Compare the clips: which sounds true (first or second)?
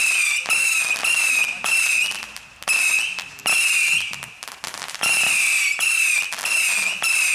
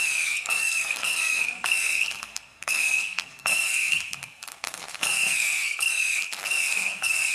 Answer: first